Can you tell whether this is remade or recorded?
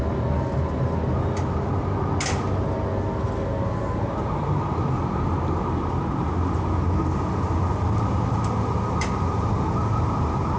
recorded